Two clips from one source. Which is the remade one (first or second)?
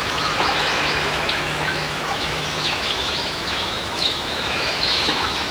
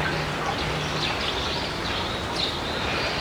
first